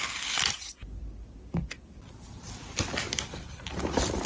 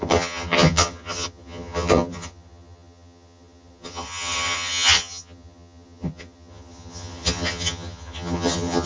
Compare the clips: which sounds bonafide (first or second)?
first